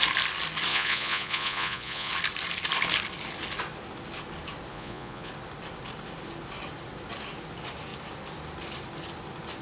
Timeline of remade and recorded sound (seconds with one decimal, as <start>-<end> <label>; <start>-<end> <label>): 0.0-0.7 recorded; 0.7-2.1 remade; 2.1-4.7 recorded; 4.7-5.3 remade; 5.3-9.6 recorded